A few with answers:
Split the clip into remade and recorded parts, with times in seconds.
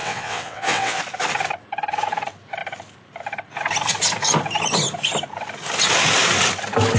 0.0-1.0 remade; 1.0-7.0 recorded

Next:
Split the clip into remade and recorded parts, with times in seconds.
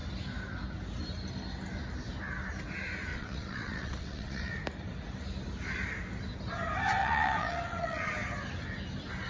0.0-3.1 recorded; 3.1-4.5 remade; 4.5-7.0 recorded; 7.0-8.1 remade; 8.1-9.3 recorded